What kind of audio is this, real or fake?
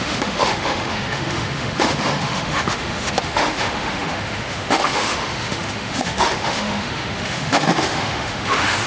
fake